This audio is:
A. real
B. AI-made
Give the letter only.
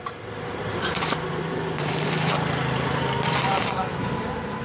B